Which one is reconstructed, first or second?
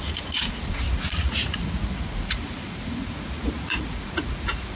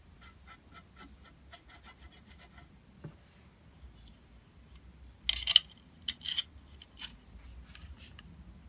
first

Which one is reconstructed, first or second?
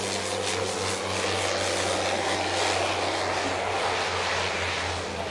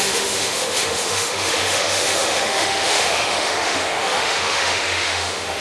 second